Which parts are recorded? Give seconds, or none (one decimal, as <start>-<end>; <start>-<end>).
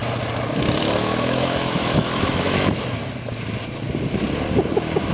0.0-0.8; 3.0-5.1